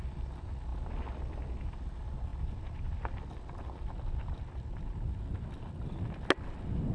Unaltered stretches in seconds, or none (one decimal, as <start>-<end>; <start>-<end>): 0.0-6.9